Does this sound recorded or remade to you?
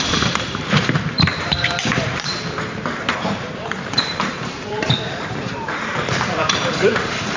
remade